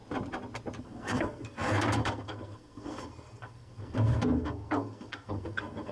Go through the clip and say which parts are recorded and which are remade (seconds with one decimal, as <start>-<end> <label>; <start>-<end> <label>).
0.0-0.8 recorded; 0.8-5.9 remade